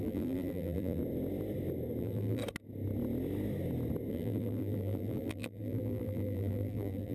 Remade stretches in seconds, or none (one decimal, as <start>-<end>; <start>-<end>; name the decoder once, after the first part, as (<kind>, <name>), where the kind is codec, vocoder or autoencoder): 0.0-1.0 (vocoder, BigVGAN v2); 2.0-2.4; 4.1-7.1